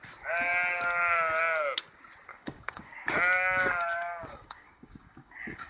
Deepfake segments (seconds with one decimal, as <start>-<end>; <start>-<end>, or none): 2.3-5.7